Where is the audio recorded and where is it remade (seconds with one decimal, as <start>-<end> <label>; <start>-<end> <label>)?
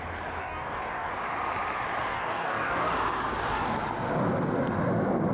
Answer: 0.0-0.4 recorded; 0.4-1.1 remade; 1.1-2.1 recorded; 2.1-2.9 remade; 2.9-3.3 recorded; 3.3-3.8 remade; 3.8-5.3 recorded